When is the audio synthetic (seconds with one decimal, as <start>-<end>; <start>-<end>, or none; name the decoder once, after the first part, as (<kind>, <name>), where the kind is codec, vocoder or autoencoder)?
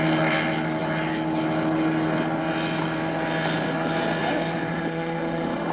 4.7-5.7 (autoencoder, DAC-VAE)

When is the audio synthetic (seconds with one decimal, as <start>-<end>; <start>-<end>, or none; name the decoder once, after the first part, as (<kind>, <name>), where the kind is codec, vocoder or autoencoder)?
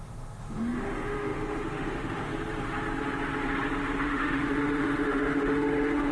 0.0-2.3 (autoencoder, DAC-VAE); 4.0-6.1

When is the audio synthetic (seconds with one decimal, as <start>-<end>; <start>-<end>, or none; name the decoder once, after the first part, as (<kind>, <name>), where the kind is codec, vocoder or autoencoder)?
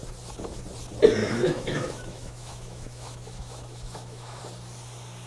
1.2-4.4 (autoencoder, DAC-VAE)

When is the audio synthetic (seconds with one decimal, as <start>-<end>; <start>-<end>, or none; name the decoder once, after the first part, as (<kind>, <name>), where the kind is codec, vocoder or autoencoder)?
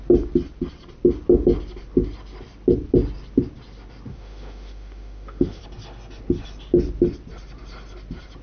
4.1-5.6 (autoencoder, DAC-VAE)